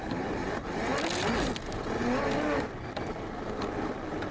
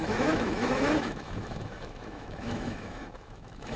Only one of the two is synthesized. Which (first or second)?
second